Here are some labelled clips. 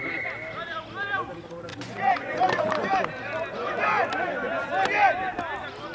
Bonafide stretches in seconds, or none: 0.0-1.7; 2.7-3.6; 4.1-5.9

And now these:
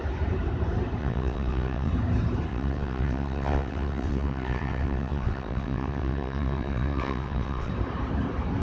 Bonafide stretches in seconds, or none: 0.0-1.0; 1.9-2.5; 7.7-8.6

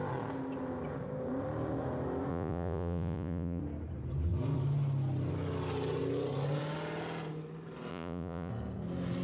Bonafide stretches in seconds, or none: 0.0-2.3; 3.6-7.9; 8.5-9.2

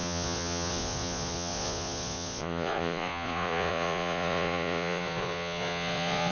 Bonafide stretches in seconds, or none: none

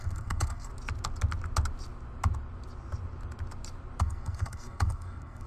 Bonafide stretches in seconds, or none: 0.7-4.0

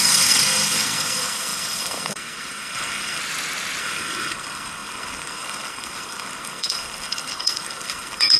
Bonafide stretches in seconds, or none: 3.2-3.8

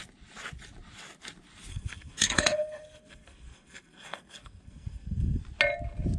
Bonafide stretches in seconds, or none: 0.0-1.7; 5.4-6.2

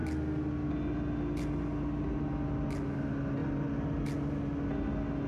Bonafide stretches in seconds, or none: 0.0-5.3